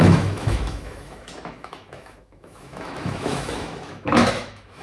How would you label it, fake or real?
fake